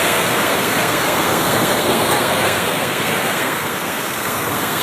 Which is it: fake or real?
fake